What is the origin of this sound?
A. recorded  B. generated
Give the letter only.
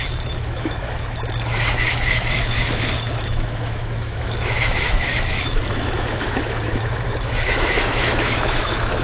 B